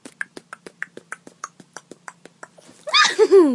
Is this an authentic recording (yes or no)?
yes